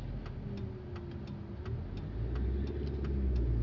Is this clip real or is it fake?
real